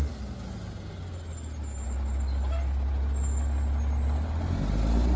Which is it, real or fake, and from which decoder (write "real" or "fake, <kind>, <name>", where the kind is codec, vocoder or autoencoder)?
real